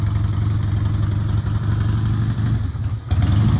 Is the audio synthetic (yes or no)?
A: no